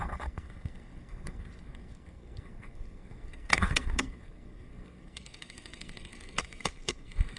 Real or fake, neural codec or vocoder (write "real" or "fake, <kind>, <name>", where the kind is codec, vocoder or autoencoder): fake, codec, SNAC